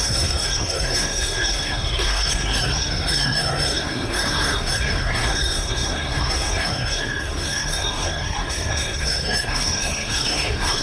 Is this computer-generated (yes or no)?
yes